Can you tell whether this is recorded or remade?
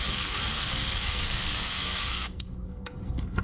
remade